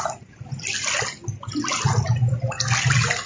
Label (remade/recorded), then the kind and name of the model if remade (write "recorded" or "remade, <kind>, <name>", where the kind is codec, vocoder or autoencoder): recorded